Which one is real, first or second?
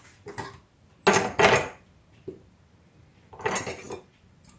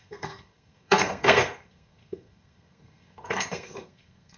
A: first